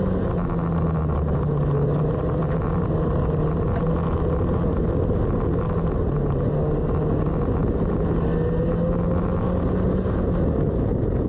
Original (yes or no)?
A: yes